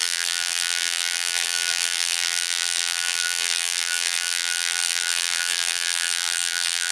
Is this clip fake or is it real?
fake